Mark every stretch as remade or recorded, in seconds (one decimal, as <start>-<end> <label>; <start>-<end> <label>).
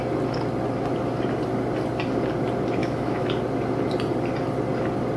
0.0-2.8 recorded; 2.8-3.3 remade; 3.3-5.2 recorded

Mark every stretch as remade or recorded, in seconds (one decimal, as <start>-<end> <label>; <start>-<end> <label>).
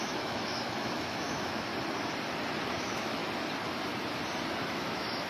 0.0-1.7 remade; 1.7-2.7 recorded; 2.7-3.2 remade; 3.2-4.7 recorded; 4.7-5.3 remade